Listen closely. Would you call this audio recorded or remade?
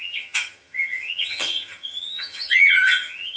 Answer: remade